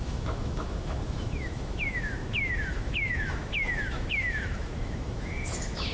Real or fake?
fake